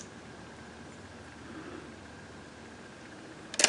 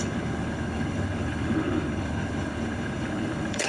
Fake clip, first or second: second